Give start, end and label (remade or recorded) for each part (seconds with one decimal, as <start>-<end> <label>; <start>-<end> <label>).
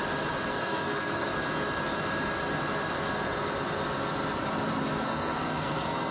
0.0-0.5 recorded; 0.5-1.3 remade; 1.3-5.0 recorded; 5.0-6.1 remade